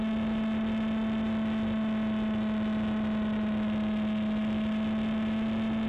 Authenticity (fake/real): real